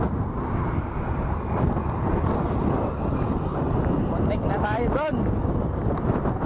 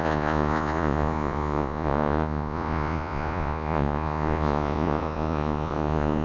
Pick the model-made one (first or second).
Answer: second